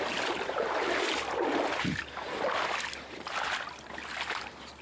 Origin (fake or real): real